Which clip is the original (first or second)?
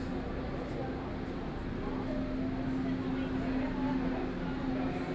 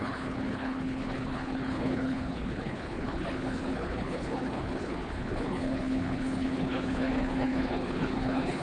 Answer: first